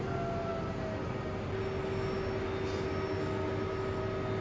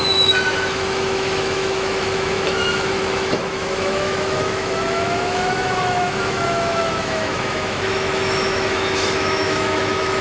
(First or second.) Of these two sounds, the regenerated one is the second